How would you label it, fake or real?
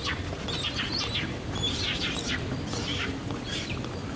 real